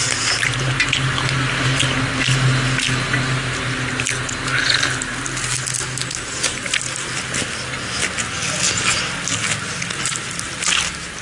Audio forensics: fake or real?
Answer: real